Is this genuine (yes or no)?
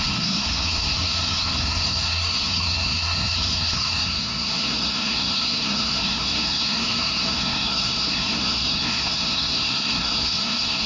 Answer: no